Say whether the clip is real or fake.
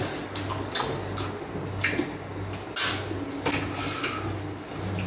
real